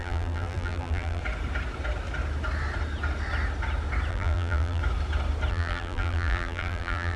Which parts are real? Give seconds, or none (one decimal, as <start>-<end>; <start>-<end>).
1.2-4.1; 4.8-5.5